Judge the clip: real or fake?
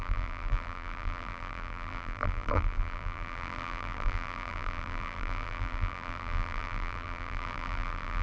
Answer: fake